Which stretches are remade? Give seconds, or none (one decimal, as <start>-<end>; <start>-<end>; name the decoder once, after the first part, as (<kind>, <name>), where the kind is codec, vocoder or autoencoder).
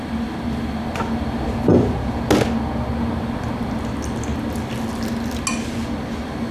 none